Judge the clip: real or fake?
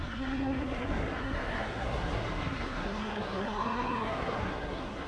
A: fake